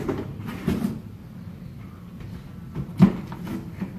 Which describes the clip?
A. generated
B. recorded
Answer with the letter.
B